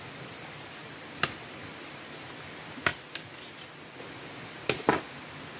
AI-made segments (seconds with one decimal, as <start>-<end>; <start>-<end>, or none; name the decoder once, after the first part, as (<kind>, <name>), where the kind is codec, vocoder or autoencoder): none